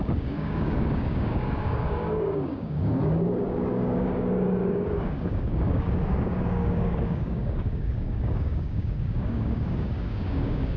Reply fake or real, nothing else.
fake